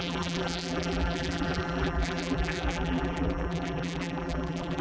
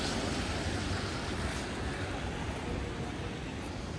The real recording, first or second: second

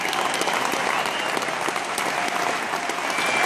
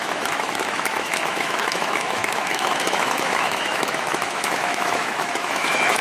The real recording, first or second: first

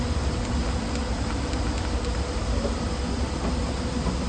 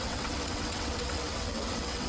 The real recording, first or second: first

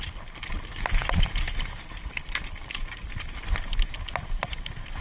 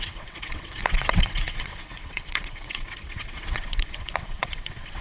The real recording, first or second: first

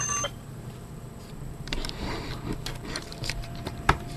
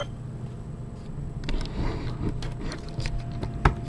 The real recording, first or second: second